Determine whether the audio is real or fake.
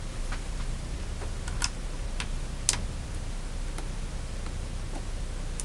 real